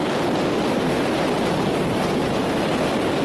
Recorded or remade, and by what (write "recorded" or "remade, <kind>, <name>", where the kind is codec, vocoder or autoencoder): recorded